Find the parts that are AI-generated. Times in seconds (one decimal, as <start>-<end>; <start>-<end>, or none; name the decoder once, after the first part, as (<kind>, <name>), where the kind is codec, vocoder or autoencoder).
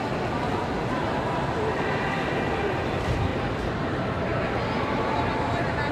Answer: 3.3-4.5 (vocoder, BigVGAN v2)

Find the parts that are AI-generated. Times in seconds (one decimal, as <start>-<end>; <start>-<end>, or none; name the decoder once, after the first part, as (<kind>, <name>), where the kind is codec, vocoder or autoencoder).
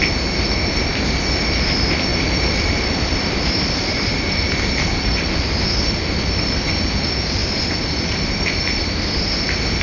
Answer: 2.1-6.8 (vocoder, BigVGAN v2); 7.4-9.8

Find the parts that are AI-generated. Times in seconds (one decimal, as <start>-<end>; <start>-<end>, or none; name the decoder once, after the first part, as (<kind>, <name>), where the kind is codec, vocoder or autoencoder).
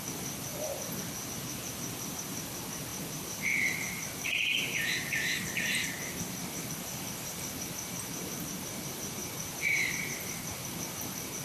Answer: 0.0-0.5 (vocoder, BigVGAN v2); 1.3-11.4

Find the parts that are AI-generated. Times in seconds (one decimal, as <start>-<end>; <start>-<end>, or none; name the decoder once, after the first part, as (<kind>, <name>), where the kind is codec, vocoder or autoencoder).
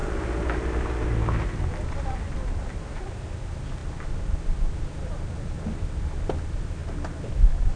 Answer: 1.4-3.8 (vocoder, BigVGAN v2); 4.7-6.8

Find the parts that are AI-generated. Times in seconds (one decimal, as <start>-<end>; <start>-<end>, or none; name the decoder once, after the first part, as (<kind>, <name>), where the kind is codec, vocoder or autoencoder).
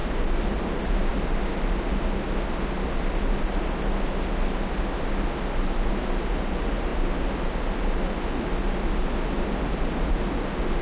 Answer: 0.0-1.1 (vocoder, BigVGAN v2)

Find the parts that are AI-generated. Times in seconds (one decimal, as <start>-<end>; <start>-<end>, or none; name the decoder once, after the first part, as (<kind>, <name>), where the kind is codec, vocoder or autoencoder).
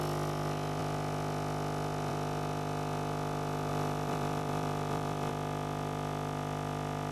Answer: 3.7-5.3 (vocoder, BigVGAN v2)